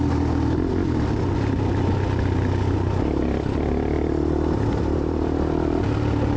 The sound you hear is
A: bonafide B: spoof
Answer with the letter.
A